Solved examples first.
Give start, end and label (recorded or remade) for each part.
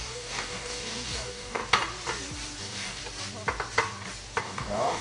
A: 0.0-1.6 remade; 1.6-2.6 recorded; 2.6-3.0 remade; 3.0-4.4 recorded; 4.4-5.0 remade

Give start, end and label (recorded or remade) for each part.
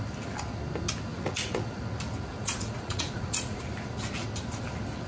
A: 0.0-1.1 recorded; 1.1-1.8 remade; 1.8-2.3 recorded; 2.3-3.6 remade; 3.6-5.1 recorded